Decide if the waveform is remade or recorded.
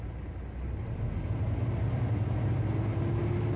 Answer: recorded